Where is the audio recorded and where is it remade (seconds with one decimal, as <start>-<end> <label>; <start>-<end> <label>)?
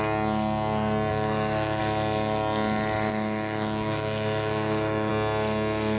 0.0-1.1 recorded; 1.1-1.8 remade; 1.8-3.1 recorded; 3.1-5.1 remade; 5.1-6.0 recorded